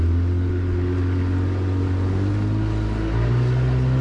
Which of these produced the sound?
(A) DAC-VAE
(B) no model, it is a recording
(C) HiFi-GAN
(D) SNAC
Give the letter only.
B